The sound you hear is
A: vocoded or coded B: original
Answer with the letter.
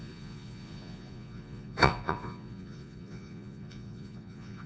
A